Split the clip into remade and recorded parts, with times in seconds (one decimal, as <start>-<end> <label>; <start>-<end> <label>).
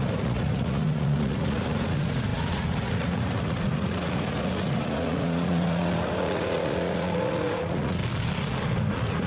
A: 0.0-8.0 remade; 8.0-8.9 recorded; 8.9-9.3 remade